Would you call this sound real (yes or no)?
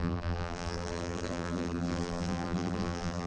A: no